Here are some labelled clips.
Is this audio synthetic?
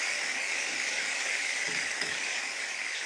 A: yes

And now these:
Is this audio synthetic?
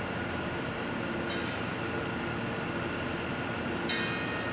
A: no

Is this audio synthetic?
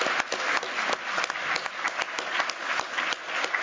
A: no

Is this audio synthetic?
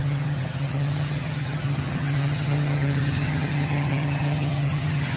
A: yes